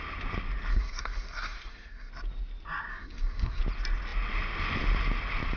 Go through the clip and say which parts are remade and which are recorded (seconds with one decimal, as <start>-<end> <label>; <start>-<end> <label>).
0.0-0.7 recorded; 0.7-2.1 remade; 2.1-2.9 recorded; 2.9-3.6 remade; 3.6-5.6 recorded